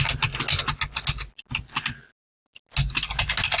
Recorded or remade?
recorded